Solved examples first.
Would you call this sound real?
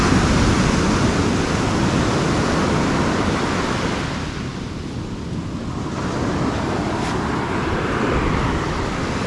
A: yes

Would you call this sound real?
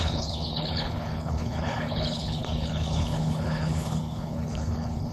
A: no